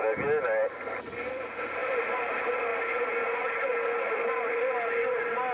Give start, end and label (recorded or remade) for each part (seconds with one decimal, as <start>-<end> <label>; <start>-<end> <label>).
0.0-5.5 recorded